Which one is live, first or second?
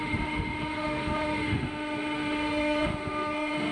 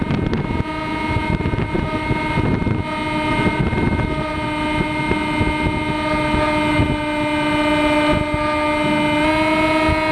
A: second